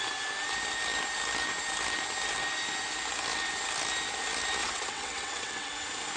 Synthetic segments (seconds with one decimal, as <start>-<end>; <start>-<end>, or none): 4.6-5.7